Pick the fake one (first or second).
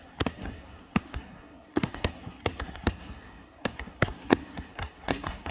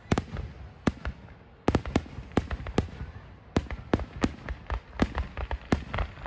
first